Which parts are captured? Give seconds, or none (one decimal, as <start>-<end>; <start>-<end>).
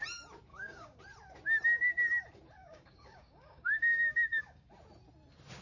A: 0.0-0.5; 1.0-2.6; 4.7-5.6